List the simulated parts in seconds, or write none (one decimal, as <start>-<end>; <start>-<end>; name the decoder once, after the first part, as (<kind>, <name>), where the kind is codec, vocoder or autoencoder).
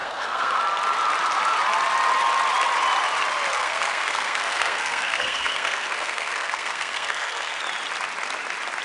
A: 0.0-0.6 (codec, SNAC); 3.5-7.6